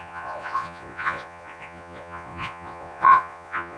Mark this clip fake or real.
fake